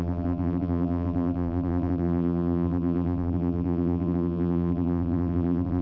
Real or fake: fake